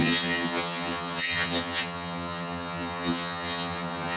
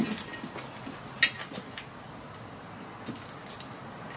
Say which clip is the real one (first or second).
second